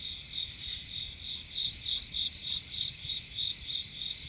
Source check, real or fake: real